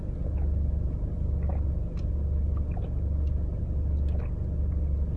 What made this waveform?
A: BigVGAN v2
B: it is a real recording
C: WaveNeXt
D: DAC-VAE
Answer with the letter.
B